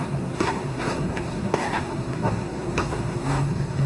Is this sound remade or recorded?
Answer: remade